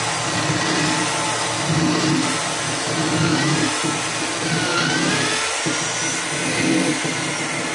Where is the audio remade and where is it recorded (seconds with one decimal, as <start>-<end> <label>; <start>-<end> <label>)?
0.0-7.7 recorded